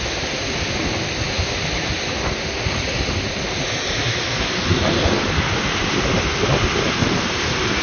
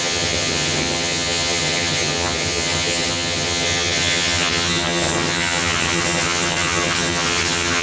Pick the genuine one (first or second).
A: first